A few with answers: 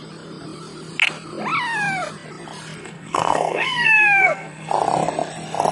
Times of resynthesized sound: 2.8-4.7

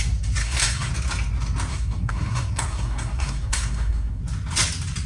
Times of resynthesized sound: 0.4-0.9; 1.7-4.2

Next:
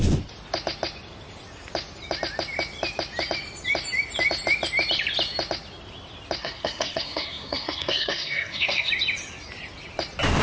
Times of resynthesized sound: 6.4-8.9